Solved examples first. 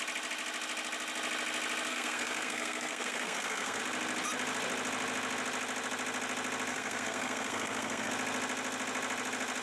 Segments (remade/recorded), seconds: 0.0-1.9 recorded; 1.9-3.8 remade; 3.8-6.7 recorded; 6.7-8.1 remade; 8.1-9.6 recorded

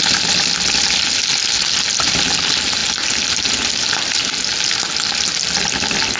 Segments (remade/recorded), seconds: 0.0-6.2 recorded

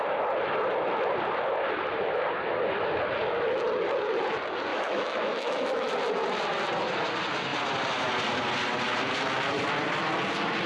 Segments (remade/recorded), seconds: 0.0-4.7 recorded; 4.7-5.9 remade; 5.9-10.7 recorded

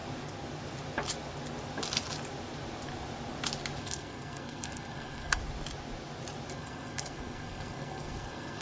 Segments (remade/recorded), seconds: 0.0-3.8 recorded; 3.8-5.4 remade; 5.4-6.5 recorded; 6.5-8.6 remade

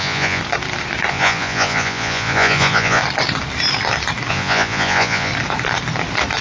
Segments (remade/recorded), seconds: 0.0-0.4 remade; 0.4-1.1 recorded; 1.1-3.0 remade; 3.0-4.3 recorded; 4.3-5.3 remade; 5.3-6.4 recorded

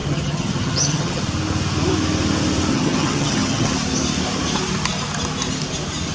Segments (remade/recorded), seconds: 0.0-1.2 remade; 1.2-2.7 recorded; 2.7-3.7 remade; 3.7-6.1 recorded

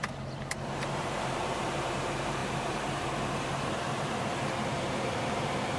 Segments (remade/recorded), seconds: 0.0-5.8 remade